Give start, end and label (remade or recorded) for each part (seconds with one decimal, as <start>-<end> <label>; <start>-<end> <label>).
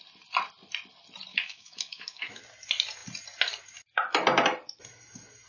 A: 0.0-1.3 recorded; 1.3-2.4 remade; 2.4-5.5 recorded